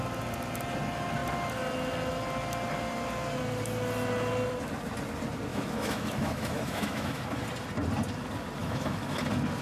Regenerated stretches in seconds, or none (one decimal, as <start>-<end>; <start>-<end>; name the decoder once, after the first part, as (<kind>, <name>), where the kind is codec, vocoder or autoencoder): 5.5-7.4 (autoencoder, DAC-VAE); 8.6-9.2